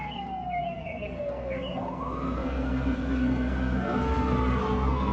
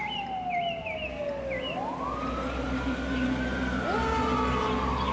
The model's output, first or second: first